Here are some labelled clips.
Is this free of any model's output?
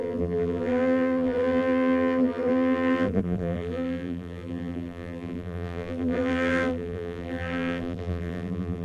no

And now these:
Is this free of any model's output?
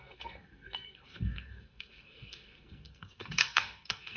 no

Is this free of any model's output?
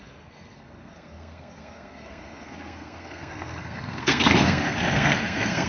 no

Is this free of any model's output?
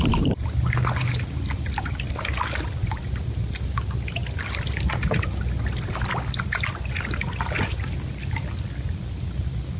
yes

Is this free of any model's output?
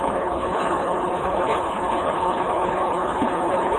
no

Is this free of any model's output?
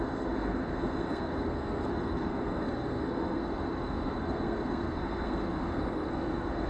no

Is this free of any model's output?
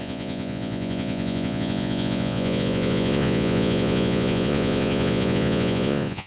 no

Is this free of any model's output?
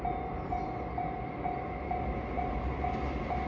yes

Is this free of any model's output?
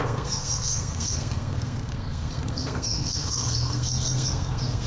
no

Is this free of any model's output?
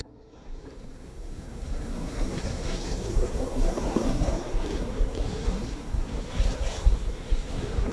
no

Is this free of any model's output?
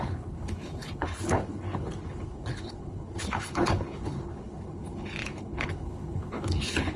no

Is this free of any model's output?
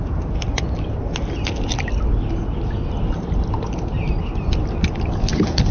yes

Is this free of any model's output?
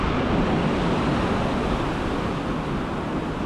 yes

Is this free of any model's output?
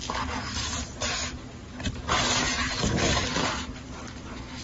yes